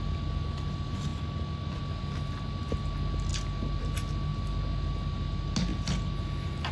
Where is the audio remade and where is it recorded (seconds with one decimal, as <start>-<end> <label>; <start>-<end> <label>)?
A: 0.0-6.7 recorded